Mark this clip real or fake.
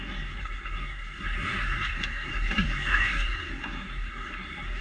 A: fake